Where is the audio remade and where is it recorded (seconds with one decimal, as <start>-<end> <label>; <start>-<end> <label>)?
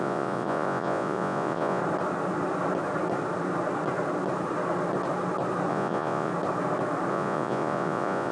0.0-1.8 remade; 1.8-5.7 recorded; 5.7-6.3 remade; 6.3-7.1 recorded; 7.1-8.3 remade